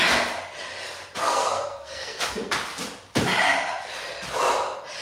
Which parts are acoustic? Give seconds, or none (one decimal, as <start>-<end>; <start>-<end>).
0.0-1.2; 2.5-5.0